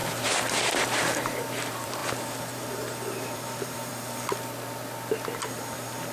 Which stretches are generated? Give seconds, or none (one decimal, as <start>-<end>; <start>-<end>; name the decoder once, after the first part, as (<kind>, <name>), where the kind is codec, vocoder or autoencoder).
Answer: 0.0-3.9 (vocoder, BigVGAN v2); 5.4-6.1